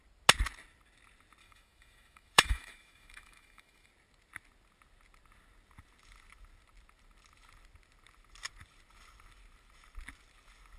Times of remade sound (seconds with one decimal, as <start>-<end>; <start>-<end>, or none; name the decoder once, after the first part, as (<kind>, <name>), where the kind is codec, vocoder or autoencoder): 1.4-3.9 (autoencoder, DAC-VAE)